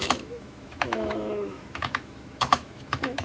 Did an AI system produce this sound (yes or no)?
yes